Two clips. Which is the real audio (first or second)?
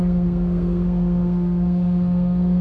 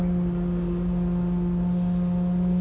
second